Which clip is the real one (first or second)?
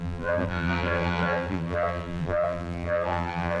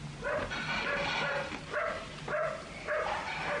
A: second